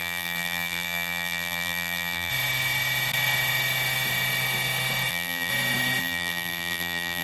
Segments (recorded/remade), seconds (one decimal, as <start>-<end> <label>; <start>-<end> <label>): 0.0-2.3 remade; 2.3-5.1 recorded; 5.1-5.5 remade; 5.5-6.0 recorded; 6.0-7.2 remade